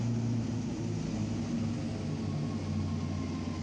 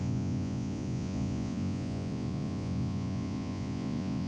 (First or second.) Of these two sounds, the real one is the first